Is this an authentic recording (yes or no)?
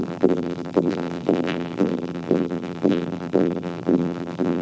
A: no